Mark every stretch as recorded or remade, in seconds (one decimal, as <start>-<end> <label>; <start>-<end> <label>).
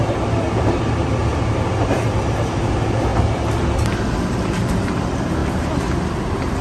0.0-1.2 remade; 1.2-1.8 recorded; 1.8-3.1 remade; 3.1-4.3 recorded; 4.3-5.4 remade; 5.4-6.6 recorded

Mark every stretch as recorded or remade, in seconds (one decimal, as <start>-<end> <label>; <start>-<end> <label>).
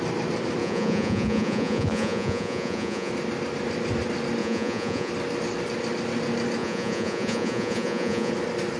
0.0-0.6 recorded; 0.6-3.1 remade; 3.1-4.4 recorded; 4.4-5.1 remade; 5.1-6.6 recorded; 6.6-8.3 remade; 8.3-8.8 recorded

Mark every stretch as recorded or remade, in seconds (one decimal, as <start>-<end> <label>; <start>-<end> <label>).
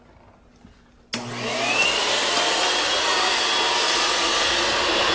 0.0-5.1 recorded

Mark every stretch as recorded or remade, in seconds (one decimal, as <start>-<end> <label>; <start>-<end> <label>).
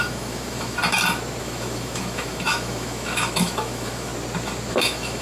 0.0-0.8 remade; 0.8-1.4 recorded; 1.4-4.1 remade; 4.1-4.7 recorded; 4.7-5.2 remade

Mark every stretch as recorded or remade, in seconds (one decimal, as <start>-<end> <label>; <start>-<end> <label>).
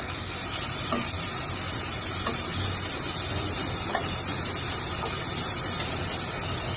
0.0-6.8 recorded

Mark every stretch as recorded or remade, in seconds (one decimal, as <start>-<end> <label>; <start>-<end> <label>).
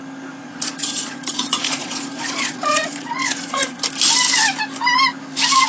0.0-0.4 recorded; 0.4-3.8 remade; 3.8-5.7 recorded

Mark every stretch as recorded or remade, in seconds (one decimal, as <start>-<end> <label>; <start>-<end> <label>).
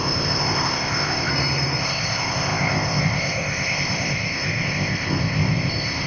0.0-1.3 remade; 1.3-1.8 recorded; 1.8-6.1 remade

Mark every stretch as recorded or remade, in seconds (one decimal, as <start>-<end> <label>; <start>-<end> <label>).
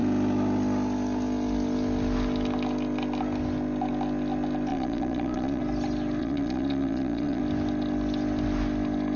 0.0-4.7 recorded; 4.7-5.6 remade; 5.6-6.2 recorded; 6.2-7.4 remade; 7.4-9.2 recorded